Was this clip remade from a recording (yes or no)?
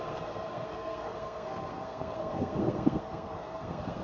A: yes